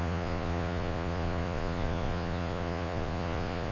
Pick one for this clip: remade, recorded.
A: remade